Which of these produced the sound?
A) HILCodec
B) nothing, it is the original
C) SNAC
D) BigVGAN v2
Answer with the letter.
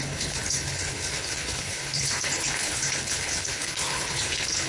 A